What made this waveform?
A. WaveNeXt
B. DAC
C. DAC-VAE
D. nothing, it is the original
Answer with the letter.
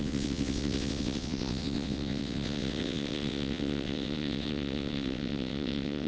A